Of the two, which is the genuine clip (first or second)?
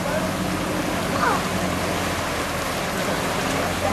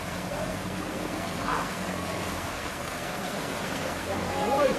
first